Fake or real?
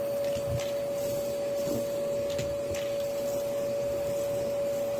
real